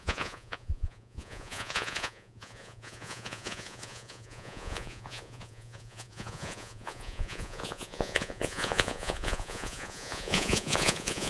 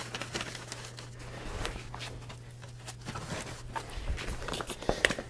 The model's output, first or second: first